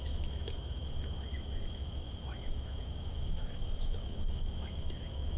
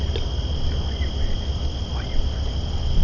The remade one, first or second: first